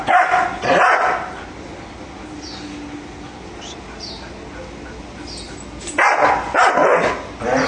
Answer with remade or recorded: recorded